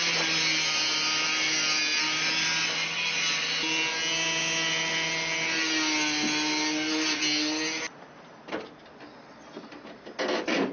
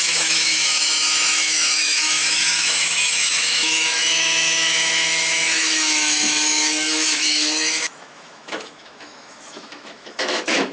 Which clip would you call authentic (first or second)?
first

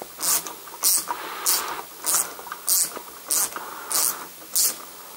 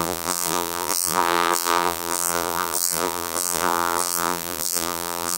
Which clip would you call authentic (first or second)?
first